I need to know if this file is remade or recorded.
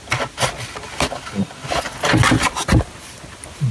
recorded